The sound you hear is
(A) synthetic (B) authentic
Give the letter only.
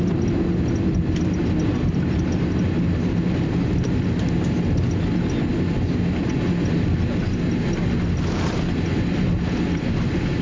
B